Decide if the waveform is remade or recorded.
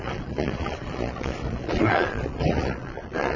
remade